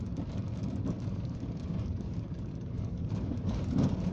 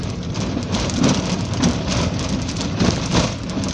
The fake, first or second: first